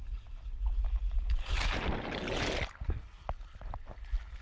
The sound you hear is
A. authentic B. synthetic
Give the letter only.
A